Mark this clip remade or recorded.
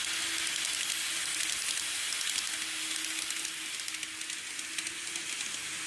recorded